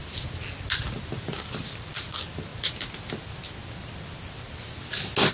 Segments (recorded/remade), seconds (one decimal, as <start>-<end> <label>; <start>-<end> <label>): 0.0-5.3 recorded